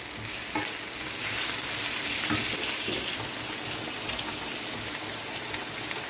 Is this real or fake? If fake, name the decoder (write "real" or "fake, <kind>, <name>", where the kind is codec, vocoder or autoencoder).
real